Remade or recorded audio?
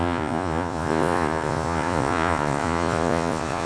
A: remade